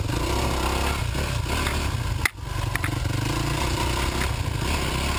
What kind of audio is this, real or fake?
real